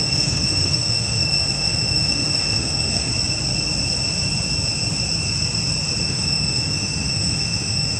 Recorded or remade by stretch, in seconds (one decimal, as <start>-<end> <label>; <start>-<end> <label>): 0.0-3.1 remade; 3.1-6.0 recorded; 6.0-8.0 remade